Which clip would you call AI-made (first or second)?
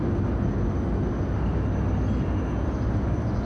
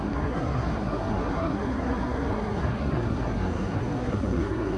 second